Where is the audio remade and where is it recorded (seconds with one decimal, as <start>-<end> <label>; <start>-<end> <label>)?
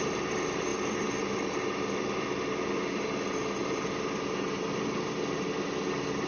0.0-6.3 recorded